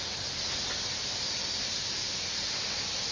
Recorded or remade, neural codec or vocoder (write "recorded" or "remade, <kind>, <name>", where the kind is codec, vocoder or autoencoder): recorded